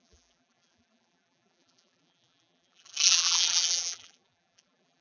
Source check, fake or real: fake